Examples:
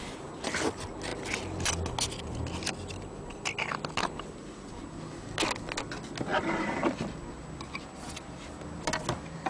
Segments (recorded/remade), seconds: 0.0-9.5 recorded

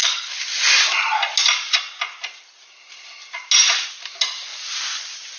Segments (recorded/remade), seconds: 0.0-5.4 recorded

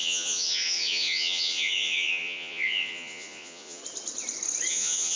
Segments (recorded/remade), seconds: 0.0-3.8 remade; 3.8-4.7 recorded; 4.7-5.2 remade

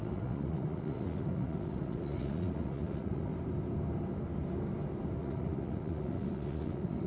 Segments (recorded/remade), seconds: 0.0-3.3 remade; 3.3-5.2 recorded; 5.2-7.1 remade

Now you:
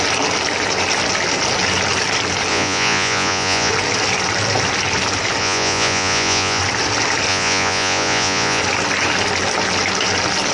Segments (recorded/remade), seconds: 0.0-2.5 recorded; 2.5-3.7 remade; 3.7-5.4 recorded; 5.4-6.6 remade; 6.6-7.3 recorded; 7.3-8.6 remade; 8.6-10.5 recorded

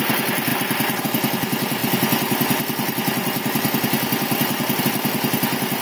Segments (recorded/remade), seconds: 0.0-5.8 recorded